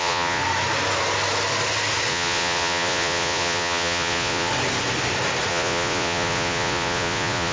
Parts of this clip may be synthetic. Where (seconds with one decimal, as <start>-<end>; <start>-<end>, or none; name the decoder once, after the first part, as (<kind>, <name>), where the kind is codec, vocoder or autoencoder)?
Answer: 0.0-0.4 (vocoder, Vocos); 2.1-4.5; 5.5-7.5